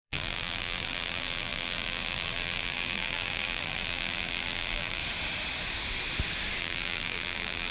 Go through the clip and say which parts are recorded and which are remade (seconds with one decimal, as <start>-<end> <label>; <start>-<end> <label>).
0.0-5.0 remade; 5.0-6.6 recorded; 6.6-7.7 remade